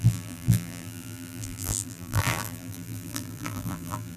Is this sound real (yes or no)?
no